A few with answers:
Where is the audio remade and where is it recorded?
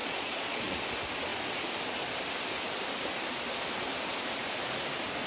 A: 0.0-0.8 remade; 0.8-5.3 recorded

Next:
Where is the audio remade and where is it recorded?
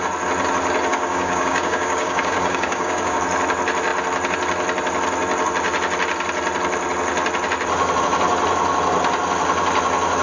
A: 0.0-0.9 recorded; 0.9-3.2 remade; 3.2-10.2 recorded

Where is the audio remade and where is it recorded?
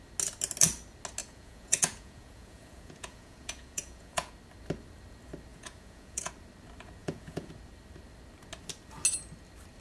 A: 0.0-1.2 recorded; 1.2-4.3 remade; 4.3-5.5 recorded; 5.5-6.3 remade; 6.3-7.0 recorded; 7.0-7.5 remade; 7.5-9.8 recorded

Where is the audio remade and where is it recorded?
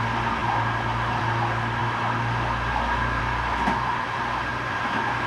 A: 0.0-5.3 recorded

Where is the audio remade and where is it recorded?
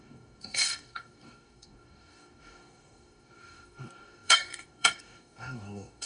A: 0.0-6.1 remade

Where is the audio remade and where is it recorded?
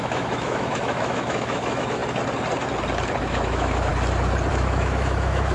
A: 0.0-2.0 remade; 2.0-3.2 recorded; 3.2-3.9 remade; 3.9-4.5 recorded; 4.5-5.5 remade